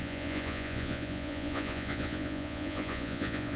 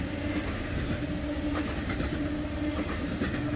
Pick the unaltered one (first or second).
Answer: second